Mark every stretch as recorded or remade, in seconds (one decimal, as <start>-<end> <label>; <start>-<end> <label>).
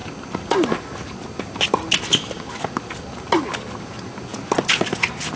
0.0-5.4 recorded